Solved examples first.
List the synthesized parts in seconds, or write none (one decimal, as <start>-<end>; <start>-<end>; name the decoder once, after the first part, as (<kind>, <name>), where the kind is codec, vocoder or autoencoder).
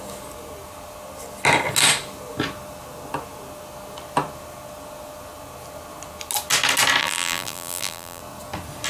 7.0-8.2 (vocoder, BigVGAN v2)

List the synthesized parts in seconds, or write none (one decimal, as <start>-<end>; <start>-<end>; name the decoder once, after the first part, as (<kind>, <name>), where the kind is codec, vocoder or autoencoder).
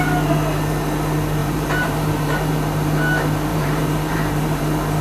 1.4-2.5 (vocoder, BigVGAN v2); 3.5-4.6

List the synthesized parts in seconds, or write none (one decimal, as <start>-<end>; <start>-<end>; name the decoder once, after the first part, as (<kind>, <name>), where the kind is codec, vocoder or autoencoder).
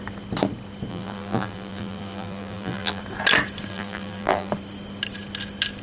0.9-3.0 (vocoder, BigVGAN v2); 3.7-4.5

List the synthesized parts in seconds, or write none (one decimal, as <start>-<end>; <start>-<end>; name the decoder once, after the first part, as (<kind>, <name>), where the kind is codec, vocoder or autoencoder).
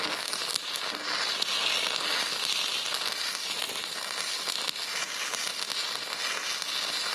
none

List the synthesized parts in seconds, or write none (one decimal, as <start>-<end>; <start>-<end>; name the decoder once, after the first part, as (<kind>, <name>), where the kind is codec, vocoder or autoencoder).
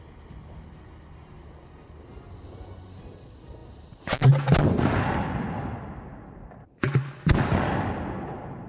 none